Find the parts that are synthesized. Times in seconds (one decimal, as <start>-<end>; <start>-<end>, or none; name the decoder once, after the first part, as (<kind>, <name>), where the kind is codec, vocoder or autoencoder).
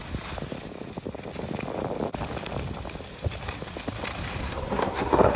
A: 4.4-5.4 (codec, SNAC)